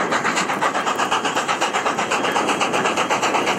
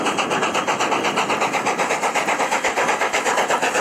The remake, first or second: first